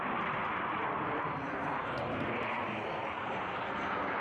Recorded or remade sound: recorded